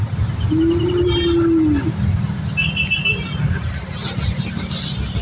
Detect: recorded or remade recorded